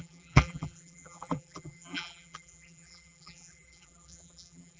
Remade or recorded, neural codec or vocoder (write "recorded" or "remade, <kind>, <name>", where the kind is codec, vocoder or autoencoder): remade, vocoder, BigVGAN v2